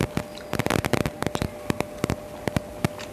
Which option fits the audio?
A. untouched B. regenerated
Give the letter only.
A